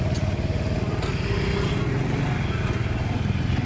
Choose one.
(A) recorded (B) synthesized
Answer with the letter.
A